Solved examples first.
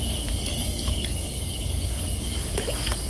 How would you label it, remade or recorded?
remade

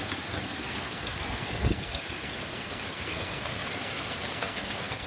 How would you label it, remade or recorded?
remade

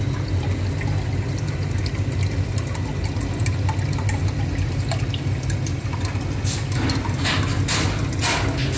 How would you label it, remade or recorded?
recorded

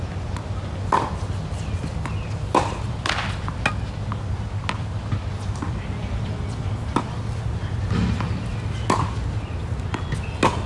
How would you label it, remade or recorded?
recorded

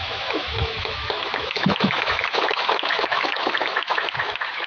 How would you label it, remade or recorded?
remade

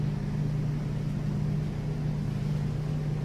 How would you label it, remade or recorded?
recorded